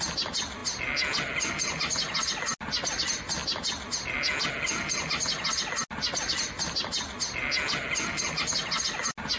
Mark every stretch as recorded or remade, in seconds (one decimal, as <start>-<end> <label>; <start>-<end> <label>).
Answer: 0.0-9.4 recorded